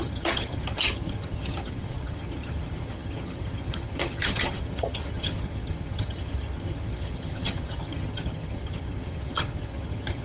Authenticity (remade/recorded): remade